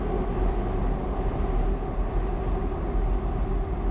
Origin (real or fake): real